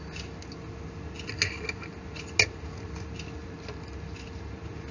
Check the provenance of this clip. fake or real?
real